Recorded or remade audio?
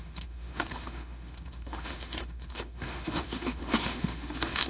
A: remade